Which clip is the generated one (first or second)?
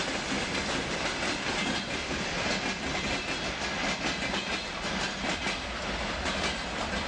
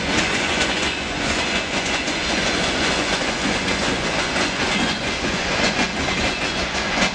second